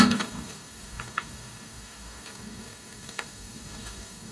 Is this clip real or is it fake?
fake